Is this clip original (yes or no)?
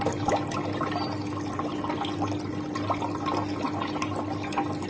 yes